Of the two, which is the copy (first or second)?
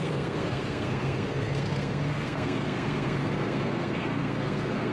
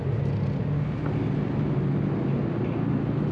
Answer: first